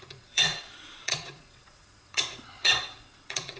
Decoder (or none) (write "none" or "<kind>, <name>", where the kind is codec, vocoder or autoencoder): vocoder, Vocos